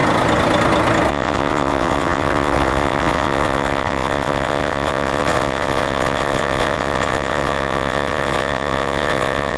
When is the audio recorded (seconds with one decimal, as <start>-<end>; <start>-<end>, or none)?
0.0-1.1